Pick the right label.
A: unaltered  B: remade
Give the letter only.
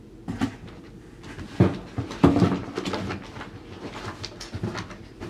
A